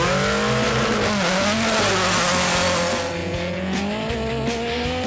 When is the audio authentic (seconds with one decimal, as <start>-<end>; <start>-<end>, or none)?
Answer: 0.0-3.2; 3.8-5.1